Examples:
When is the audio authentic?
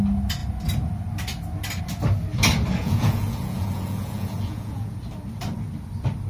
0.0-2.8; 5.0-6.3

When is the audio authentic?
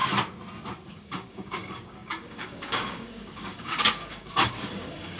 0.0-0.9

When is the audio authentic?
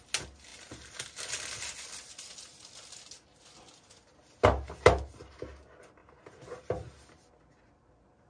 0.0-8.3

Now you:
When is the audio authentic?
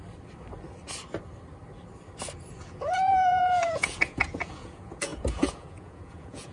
0.0-2.6